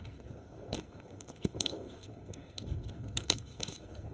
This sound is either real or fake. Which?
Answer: fake